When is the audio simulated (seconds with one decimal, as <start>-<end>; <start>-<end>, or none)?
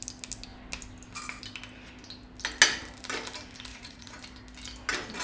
3.7-4.2